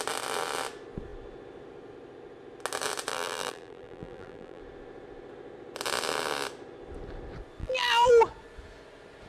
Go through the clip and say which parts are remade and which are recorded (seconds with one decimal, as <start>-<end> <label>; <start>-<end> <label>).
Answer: 0.0-3.1 recorded; 3.1-4.6 remade; 4.6-7.6 recorded; 7.6-8.1 remade; 8.1-9.3 recorded